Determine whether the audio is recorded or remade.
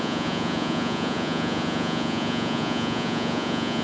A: remade